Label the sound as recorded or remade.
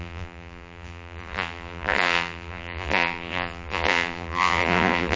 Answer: remade